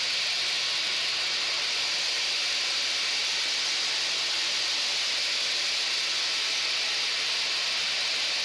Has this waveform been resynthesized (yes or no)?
no